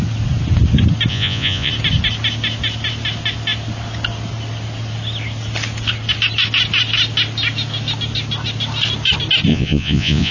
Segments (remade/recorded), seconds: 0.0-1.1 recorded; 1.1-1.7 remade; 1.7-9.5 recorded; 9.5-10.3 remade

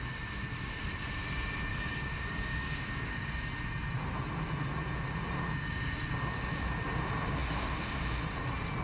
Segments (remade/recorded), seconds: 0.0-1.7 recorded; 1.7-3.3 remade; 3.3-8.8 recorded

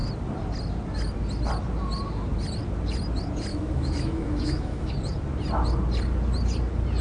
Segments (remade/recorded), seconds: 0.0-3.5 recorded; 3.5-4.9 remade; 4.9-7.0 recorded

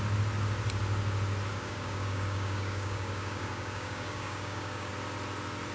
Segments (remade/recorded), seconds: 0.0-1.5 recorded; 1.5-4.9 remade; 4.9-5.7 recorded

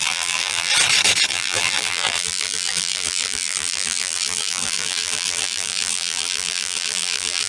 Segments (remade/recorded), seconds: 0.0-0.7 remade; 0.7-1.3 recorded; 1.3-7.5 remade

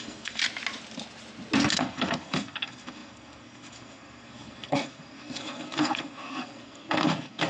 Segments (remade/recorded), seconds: 0.0-0.4 remade; 0.4-1.7 recorded; 1.7-7.5 remade

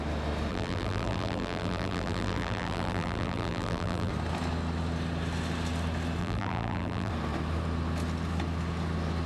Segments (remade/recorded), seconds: 0.0-0.5 recorded; 0.5-4.1 remade; 4.1-6.2 recorded; 6.2-7.1 remade; 7.1-9.3 recorded

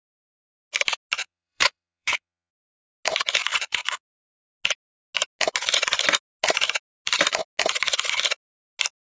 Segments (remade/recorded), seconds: 0.0-1.2 recorded; 1.2-2.5 remade; 2.5-3.5 recorded; 3.5-4.0 remade; 4.0-9.0 recorded